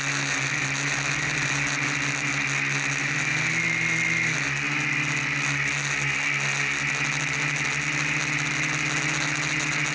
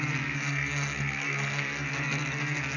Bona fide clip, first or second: first